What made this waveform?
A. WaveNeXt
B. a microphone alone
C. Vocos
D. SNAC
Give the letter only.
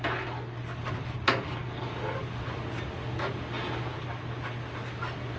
B